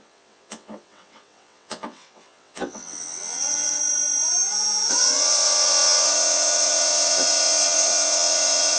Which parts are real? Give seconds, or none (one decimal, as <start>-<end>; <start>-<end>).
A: 3.8-4.9